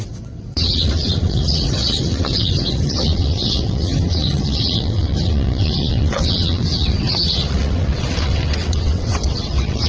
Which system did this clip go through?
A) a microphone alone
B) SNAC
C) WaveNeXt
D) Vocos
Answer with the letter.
C